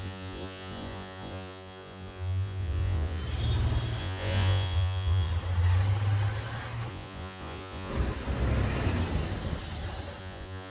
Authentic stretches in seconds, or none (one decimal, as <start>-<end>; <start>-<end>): 3.2-4.0; 5.3-6.9; 7.9-10.2